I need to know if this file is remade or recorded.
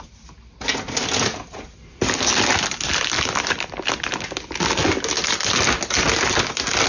recorded